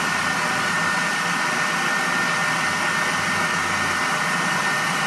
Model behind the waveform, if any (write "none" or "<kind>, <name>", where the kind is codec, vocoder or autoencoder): none